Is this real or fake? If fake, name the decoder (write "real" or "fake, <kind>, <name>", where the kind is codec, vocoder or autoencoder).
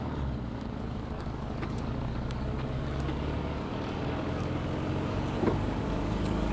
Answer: fake, codec, DAC